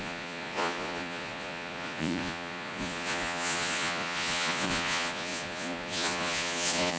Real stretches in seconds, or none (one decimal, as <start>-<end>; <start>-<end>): none